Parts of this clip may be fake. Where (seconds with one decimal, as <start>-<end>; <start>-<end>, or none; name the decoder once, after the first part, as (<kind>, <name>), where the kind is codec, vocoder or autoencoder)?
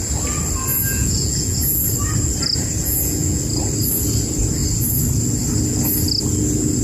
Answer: 0.7-1.6 (vocoder, Vocos); 2.8-3.4